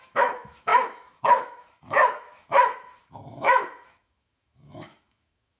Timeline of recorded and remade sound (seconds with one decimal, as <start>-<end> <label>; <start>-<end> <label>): 0.0-5.6 remade